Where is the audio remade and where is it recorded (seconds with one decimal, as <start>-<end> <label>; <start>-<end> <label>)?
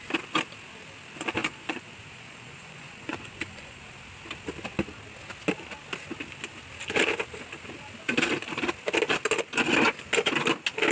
0.0-1.4 recorded; 1.4-3.8 remade; 3.8-10.9 recorded